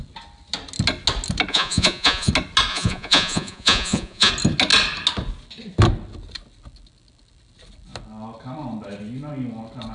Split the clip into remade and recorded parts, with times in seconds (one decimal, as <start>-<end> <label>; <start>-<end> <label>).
0.0-1.5 recorded; 1.5-2.3 remade; 2.3-2.7 recorded; 2.7-4.3 remade; 4.3-9.9 recorded